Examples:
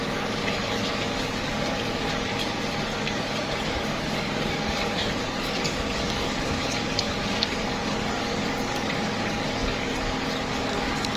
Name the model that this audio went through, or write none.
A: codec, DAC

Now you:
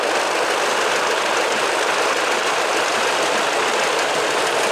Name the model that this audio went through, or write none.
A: none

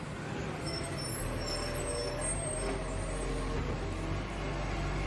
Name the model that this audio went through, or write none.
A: none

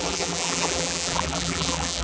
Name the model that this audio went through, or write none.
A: vocoder, BigVGAN v2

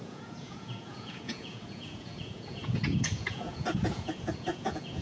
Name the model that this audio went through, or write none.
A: vocoder, Vocos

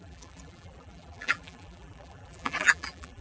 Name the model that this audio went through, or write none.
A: vocoder, BigVGAN v2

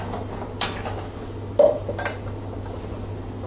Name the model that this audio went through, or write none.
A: none